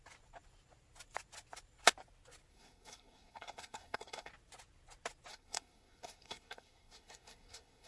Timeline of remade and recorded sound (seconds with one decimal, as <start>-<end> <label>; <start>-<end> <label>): 0.0-2.5 recorded; 2.5-4.3 remade; 4.3-5.3 recorded; 5.3-7.9 remade